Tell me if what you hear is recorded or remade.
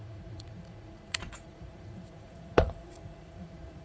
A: remade